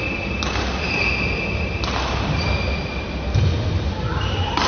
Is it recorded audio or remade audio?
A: recorded